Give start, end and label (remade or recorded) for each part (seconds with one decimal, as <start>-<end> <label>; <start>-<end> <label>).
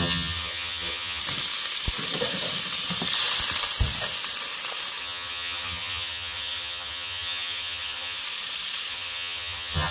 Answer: 0.0-1.2 remade; 1.2-5.0 recorded; 5.0-8.2 remade; 8.2-8.9 recorded; 8.9-9.9 remade